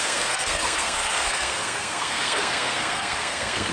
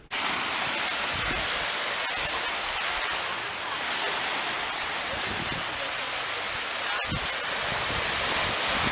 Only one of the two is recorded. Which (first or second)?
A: second